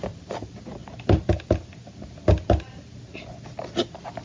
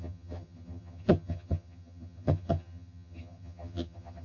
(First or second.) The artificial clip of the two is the second